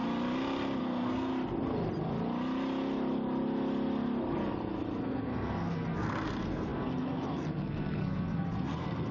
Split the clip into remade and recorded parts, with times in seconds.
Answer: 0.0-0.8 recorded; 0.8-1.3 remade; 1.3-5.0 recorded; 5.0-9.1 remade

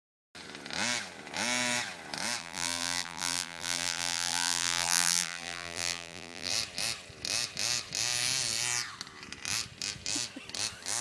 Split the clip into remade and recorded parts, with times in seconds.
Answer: 0.0-2.4 recorded; 2.4-6.5 remade; 6.5-11.0 recorded

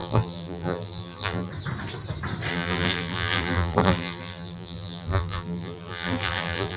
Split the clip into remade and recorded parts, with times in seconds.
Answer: 0.0-1.5 remade; 1.5-2.5 recorded; 2.5-6.8 remade

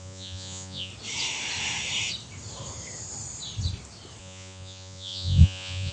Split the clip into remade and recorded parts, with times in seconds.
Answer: 0.0-0.9 remade; 0.9-4.2 recorded; 4.2-5.9 remade

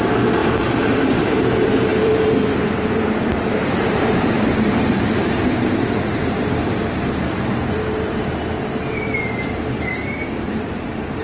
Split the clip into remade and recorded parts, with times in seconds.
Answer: 0.0-11.2 remade